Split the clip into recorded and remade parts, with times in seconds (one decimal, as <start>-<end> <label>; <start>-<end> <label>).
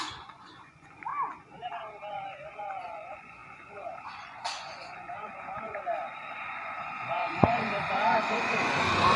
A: 0.0-1.1 remade; 1.1-2.1 recorded; 2.1-9.2 remade